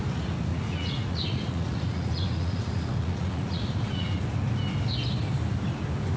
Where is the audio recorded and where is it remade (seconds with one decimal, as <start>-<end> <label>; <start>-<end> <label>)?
0.0-0.5 recorded; 0.5-4.2 remade; 4.2-6.2 recorded